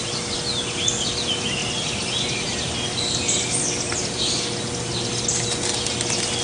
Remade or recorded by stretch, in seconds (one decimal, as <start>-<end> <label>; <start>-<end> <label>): 0.0-6.4 recorded